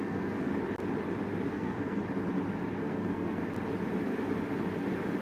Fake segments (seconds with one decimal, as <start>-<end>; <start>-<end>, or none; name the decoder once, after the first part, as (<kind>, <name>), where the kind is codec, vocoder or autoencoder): 0.0-0.5 (codec, SNAC); 1.5-2.0; 2.8-3.4